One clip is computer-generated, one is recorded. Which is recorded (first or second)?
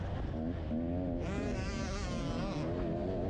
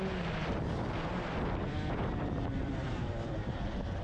first